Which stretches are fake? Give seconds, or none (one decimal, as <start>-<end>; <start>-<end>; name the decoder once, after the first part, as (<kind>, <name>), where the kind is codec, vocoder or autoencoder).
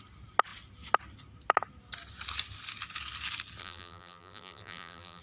3.6-5.2 (vocoder, BigVGAN v2)